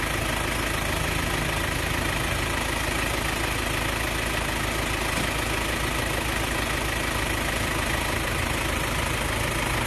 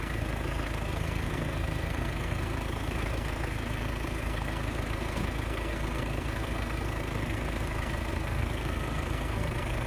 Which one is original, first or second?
first